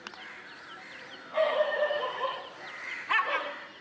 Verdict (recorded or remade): recorded